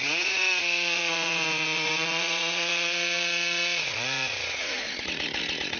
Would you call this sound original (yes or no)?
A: no